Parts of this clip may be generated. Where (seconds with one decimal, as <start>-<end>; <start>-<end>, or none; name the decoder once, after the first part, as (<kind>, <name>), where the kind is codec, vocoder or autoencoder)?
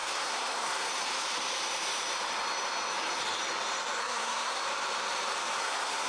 0.0-0.9 (codec, SNAC); 4.0-4.6; 5.6-6.1